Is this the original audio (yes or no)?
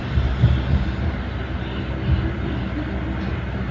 yes